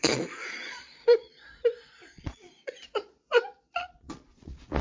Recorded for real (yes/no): no